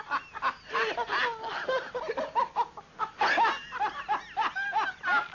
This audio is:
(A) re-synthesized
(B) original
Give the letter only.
B